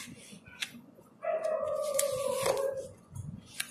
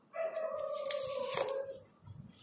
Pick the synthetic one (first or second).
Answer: first